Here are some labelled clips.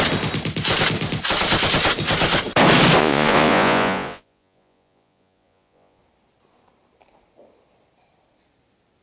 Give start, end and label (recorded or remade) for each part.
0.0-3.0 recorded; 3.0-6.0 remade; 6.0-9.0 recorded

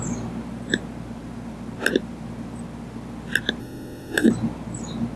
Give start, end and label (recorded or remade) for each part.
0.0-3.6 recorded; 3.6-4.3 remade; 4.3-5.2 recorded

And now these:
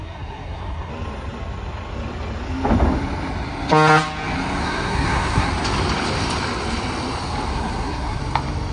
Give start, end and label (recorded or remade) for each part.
0.0-0.9 remade; 0.9-4.6 recorded; 4.6-5.5 remade; 5.5-7.5 recorded; 7.5-8.2 remade; 8.2-8.7 recorded